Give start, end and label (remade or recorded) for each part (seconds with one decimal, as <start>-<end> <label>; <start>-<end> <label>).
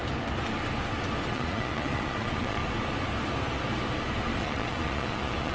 0.0-1.3 recorded; 1.3-2.6 remade; 2.6-4.4 recorded; 4.4-5.5 remade